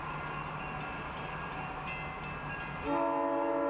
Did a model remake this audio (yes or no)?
no